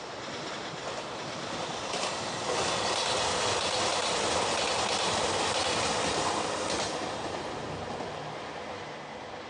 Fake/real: real